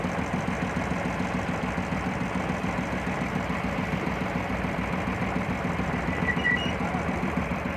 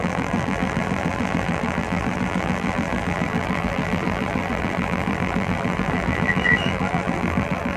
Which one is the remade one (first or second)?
second